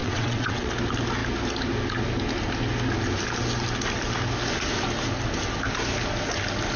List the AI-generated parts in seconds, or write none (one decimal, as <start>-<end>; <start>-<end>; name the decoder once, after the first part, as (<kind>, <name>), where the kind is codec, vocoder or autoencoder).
0.0-0.7 (vocoder, WaveNeXt)